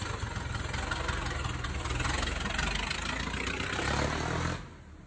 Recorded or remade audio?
recorded